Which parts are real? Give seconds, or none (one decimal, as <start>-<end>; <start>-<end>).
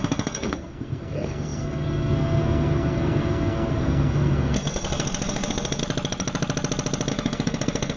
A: 5.8-7.1